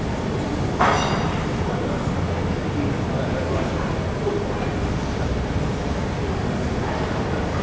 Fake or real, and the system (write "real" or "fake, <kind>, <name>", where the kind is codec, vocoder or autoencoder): real